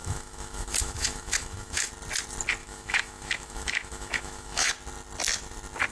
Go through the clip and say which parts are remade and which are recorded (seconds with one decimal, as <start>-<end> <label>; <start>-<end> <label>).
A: 0.0-1.9 remade; 1.9-2.6 recorded; 2.6-4.7 remade; 4.7-5.9 recorded